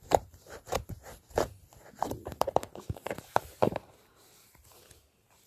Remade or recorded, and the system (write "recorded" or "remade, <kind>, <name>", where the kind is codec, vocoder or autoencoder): remade, vocoder, BigVGAN v2